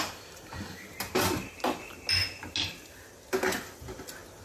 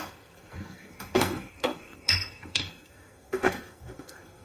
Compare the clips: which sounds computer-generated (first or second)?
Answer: second